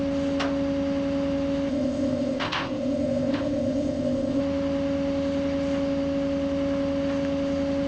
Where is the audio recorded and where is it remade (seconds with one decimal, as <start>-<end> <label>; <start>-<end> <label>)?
0.0-1.7 recorded; 1.7-4.4 remade; 4.4-7.9 recorded